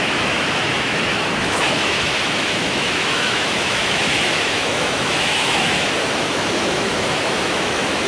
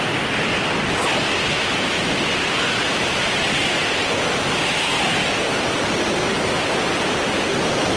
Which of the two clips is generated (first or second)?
first